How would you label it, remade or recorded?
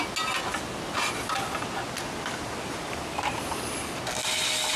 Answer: recorded